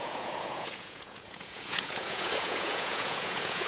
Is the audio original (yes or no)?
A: no